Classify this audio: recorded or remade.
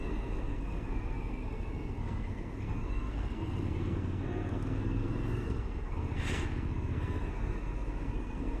remade